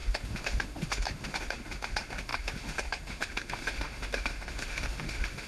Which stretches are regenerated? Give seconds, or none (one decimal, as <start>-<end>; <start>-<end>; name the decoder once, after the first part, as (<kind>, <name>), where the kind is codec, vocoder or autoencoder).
0.0-5.5 (autoencoder, DAC-VAE)